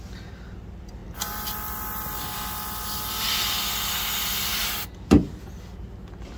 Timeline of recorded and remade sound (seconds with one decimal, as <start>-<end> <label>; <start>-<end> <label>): 0.0-6.4 recorded